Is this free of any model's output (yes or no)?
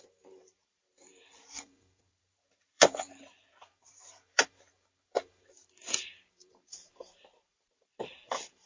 no